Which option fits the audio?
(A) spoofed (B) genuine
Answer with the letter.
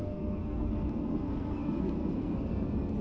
A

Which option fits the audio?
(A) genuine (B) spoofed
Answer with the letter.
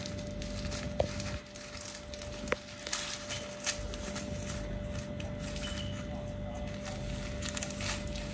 A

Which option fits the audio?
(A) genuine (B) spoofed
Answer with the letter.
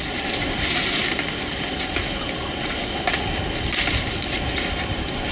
A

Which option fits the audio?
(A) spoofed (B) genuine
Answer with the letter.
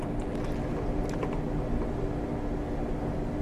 B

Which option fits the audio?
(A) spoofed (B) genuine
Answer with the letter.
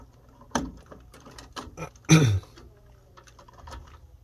B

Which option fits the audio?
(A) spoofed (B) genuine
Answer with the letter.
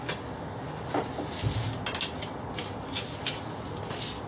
B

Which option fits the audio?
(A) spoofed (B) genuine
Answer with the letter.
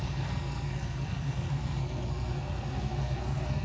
A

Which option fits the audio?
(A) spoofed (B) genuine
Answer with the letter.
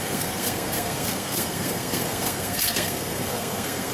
A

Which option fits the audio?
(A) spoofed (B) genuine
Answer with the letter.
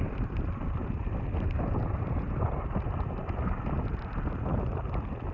B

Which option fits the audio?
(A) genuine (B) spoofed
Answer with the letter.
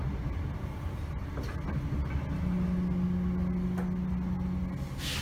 A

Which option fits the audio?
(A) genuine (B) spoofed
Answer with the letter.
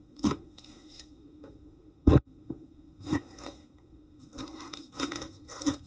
B